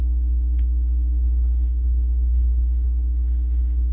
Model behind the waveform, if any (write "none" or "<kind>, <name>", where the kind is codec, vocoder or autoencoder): codec, HILCodec